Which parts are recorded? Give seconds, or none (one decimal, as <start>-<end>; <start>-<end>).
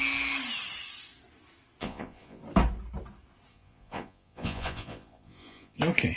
0.0-1.8; 2.4-3.5; 5.8-6.2